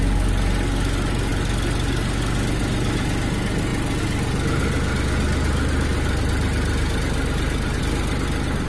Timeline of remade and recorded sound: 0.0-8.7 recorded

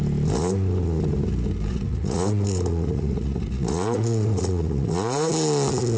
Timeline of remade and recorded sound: 0.0-1.7 recorded; 1.7-5.3 remade; 5.3-6.0 recorded

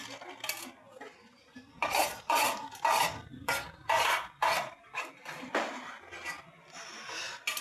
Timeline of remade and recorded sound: 0.0-1.3 recorded; 1.3-2.6 remade; 2.6-3.3 recorded; 3.3-5.9 remade; 5.9-7.6 recorded

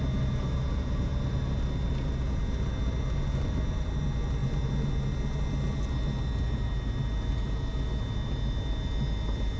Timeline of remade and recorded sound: 0.0-9.6 recorded

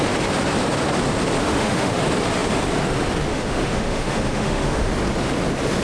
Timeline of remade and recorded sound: 0.0-1.4 recorded; 1.4-2.0 remade; 2.0-3.3 recorded; 3.3-4.9 remade; 4.9-5.8 recorded